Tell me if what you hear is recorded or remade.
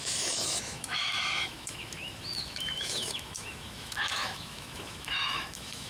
remade